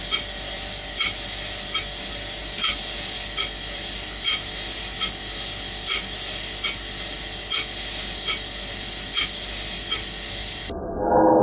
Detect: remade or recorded recorded